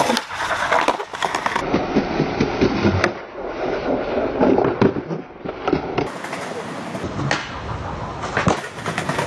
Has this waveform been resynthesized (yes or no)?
no